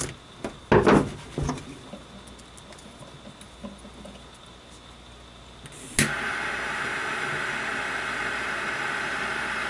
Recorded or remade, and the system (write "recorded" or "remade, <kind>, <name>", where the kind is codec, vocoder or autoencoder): recorded